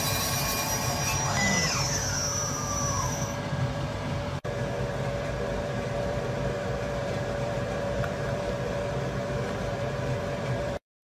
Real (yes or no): no